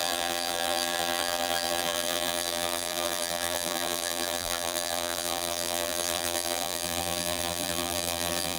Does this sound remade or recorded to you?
remade